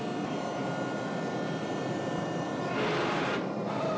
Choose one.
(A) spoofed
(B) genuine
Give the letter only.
B